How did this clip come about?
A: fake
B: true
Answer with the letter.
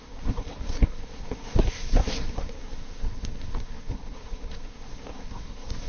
A